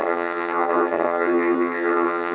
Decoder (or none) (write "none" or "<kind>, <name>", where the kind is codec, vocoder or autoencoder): vocoder, HiFi-GAN